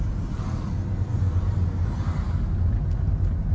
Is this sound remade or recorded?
recorded